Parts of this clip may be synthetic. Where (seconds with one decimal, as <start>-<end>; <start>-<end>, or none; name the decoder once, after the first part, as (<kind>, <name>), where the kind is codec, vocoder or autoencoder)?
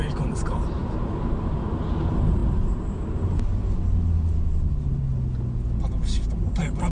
none